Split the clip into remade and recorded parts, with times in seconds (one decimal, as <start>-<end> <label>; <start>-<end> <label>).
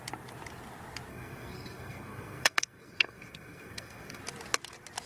0.0-1.1 recorded; 1.1-4.2 remade; 4.2-5.1 recorded